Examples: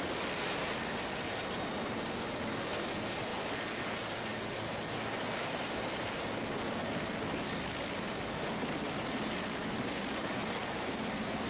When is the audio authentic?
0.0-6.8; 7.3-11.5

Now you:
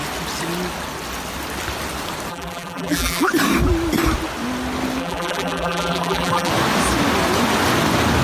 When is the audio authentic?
0.0-2.3; 3.3-5.0; 6.5-8.2

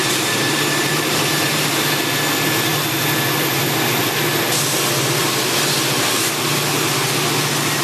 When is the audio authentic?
1.7-7.8

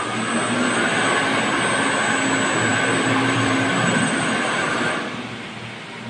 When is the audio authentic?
0.0-2.7; 5.0-6.1

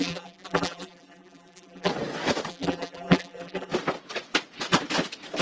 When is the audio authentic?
1.9-2.5; 3.7-5.4

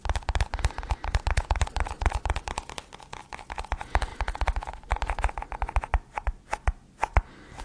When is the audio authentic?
0.0-7.6